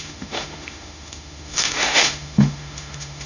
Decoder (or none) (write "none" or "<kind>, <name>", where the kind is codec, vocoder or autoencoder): autoencoder, DAC-VAE